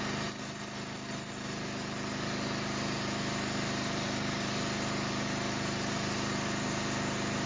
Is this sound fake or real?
real